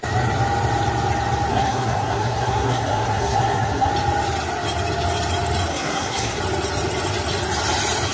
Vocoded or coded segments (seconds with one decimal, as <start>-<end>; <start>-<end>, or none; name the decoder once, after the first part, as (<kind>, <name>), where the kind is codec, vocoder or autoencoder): 1.5-3.9 (codec, SNAC); 5.7-6.4